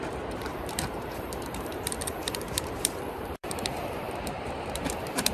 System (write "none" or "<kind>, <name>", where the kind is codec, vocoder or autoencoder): vocoder, BigVGAN v2